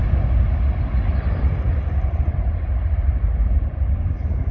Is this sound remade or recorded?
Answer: recorded